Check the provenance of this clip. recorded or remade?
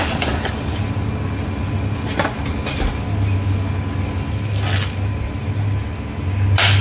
recorded